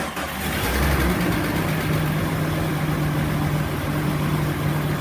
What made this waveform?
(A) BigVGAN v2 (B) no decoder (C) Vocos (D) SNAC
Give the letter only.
B